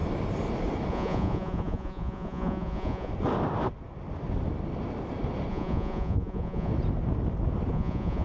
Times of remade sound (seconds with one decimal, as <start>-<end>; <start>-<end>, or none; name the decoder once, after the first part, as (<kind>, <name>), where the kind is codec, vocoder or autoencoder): 0.9-3.1 (vocoder, Vocos); 5.5-6.7; 7.7-8.2